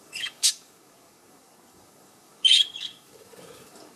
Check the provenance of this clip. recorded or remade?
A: remade